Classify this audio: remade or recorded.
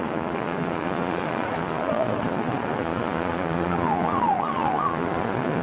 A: remade